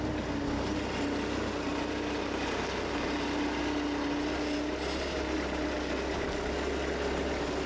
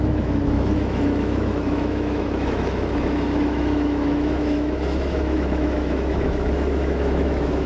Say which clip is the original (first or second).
first